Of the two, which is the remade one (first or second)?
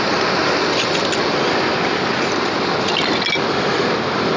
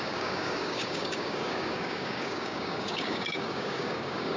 second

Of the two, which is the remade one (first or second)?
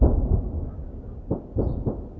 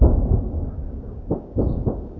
second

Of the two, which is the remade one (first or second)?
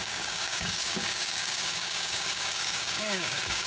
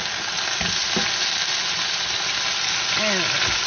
first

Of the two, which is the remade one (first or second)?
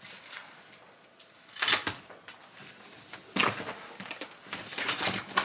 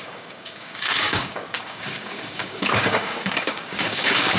second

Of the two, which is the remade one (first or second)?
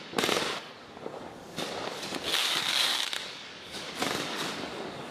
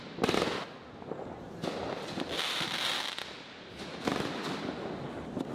first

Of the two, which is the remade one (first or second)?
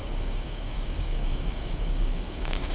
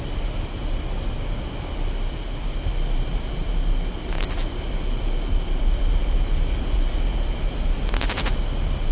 first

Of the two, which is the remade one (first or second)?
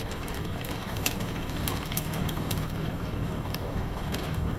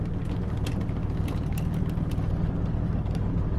first